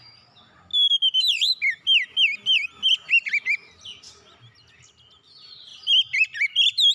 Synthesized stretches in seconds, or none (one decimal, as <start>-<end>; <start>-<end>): 5.7-6.9